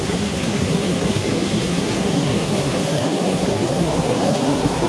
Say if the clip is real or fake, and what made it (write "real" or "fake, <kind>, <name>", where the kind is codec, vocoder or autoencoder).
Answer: fake, codec, SNAC